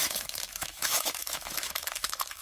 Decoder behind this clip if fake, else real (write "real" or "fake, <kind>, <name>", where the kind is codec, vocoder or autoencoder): fake, autoencoder, DAC-VAE